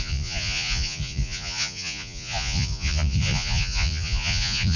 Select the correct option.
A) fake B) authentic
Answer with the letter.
A